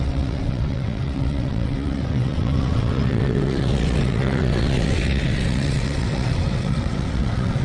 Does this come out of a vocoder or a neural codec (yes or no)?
yes